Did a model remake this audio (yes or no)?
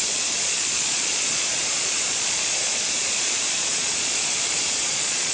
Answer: yes